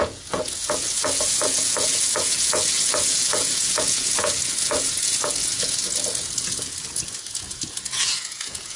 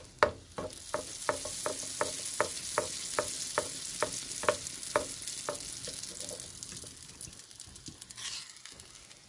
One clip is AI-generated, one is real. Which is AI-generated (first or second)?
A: first